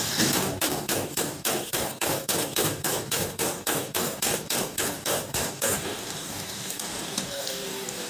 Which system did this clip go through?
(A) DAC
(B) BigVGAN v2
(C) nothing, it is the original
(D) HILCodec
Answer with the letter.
A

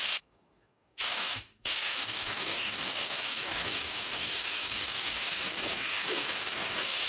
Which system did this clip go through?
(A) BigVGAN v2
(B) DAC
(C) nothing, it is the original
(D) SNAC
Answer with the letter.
B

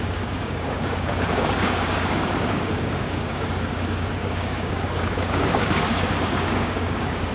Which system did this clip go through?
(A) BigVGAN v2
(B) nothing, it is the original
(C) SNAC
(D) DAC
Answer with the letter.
D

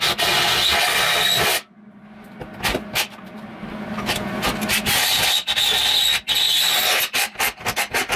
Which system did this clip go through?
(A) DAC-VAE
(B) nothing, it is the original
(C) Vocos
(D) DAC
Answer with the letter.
B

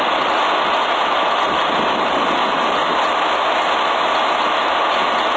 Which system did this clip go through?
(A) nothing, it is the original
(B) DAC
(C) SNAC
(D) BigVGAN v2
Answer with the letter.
A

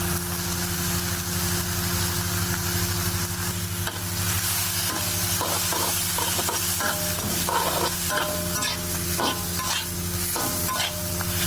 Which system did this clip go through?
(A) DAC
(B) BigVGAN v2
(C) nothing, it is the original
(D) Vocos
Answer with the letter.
C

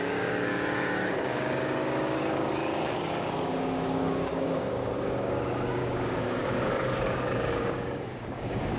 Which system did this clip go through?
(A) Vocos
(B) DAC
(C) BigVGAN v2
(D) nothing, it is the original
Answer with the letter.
B